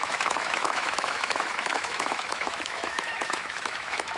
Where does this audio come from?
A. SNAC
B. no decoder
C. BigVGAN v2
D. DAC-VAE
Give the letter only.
D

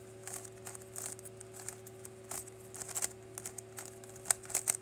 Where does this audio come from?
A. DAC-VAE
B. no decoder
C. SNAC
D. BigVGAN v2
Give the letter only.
B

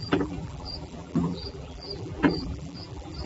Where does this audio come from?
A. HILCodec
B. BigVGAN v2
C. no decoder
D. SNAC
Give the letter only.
B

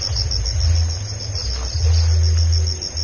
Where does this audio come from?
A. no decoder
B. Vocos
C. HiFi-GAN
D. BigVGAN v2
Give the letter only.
A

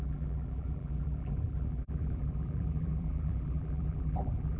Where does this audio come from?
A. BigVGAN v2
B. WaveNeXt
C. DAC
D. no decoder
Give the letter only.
A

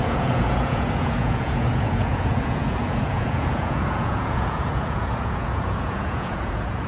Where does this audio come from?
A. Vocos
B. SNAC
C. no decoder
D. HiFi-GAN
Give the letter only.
A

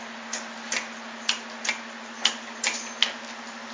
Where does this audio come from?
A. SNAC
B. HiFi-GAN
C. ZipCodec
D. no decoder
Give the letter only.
D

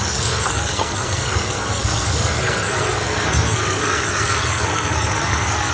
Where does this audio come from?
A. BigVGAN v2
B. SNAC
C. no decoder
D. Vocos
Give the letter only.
B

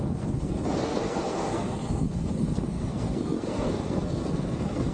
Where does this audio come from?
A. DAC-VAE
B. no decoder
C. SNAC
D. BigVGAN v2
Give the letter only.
C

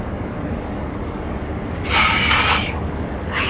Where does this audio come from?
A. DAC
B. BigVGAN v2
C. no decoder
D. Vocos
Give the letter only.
A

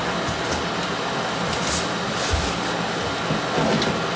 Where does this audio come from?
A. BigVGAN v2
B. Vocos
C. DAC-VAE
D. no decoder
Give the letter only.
D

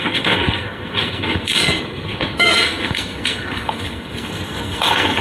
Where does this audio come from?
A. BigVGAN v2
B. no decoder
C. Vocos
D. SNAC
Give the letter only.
D